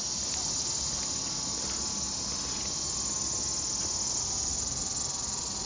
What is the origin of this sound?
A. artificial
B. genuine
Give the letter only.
B